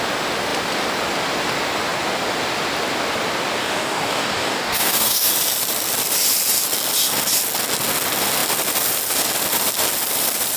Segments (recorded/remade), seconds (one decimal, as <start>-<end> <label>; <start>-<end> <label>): 0.0-3.6 recorded; 3.6-5.3 remade; 5.3-10.6 recorded